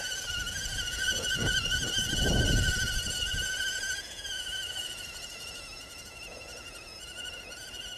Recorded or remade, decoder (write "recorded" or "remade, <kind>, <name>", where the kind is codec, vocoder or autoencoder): remade, vocoder, Vocos